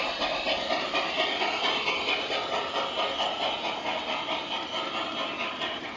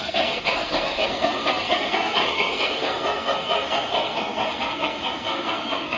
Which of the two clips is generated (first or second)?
second